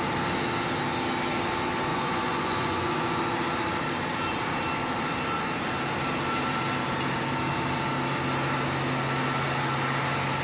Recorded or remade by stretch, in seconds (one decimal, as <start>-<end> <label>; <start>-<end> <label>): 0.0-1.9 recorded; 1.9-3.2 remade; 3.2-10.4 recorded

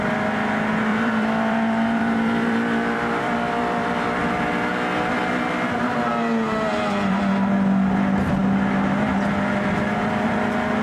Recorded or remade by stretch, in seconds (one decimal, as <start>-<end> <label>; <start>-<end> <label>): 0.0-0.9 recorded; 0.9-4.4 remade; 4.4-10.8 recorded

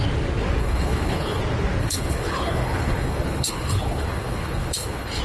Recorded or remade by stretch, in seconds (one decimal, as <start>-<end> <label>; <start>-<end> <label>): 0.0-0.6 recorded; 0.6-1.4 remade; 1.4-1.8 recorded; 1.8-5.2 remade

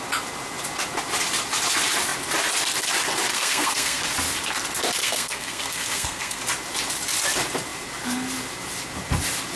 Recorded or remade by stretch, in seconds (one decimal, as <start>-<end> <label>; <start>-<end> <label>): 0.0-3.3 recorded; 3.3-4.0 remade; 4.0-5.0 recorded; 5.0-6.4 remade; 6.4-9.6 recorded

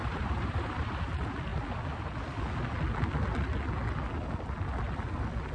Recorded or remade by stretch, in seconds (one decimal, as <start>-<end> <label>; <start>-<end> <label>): 0.0-1.0 remade; 1.0-5.5 recorded